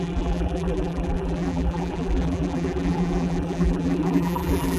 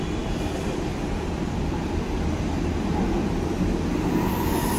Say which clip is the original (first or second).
second